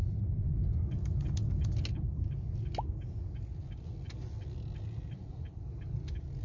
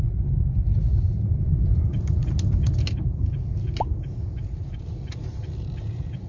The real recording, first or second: first